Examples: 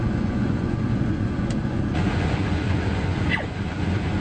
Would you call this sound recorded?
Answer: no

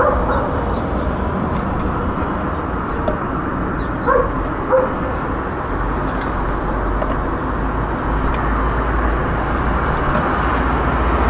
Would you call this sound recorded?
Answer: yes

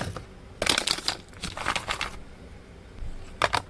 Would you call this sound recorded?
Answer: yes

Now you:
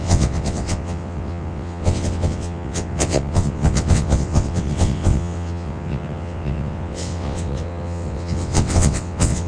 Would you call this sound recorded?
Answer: no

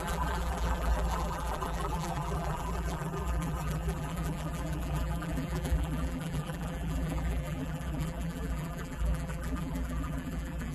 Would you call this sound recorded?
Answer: no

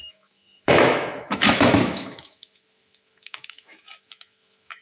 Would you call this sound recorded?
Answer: no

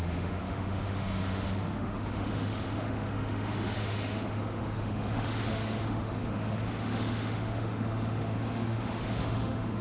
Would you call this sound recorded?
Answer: no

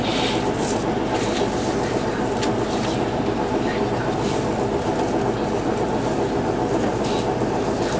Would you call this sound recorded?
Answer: yes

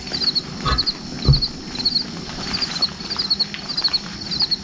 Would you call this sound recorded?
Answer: yes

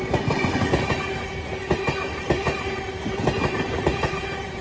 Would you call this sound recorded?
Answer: yes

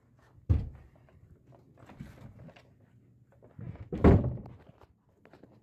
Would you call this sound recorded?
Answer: yes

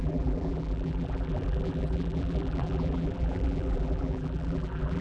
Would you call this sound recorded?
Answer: no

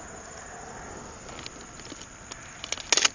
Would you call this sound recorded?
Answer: yes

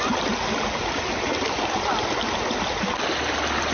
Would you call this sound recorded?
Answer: yes